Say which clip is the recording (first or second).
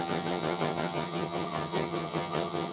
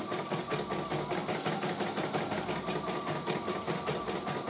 second